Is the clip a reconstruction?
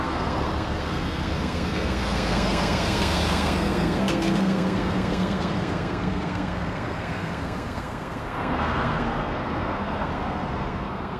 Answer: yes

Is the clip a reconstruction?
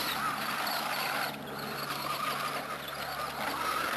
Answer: no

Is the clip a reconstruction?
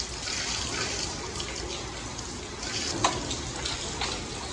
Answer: no